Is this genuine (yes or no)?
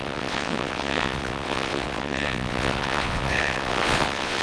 no